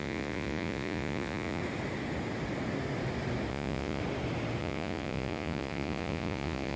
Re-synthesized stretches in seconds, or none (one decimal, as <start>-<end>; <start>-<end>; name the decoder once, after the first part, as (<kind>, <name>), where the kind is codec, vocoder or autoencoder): 0.0-1.6 (vocoder, Vocos); 3.5-4.0; 4.6-6.8